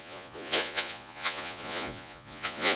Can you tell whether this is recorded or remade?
remade